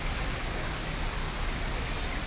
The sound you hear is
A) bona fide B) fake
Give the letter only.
A